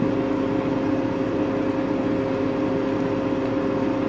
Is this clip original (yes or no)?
yes